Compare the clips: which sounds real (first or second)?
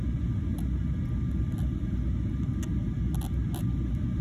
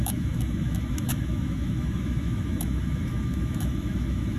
first